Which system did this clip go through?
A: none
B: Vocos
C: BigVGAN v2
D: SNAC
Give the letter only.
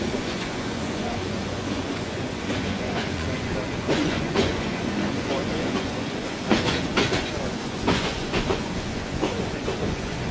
B